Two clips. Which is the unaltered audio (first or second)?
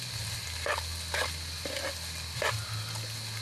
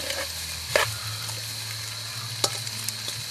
first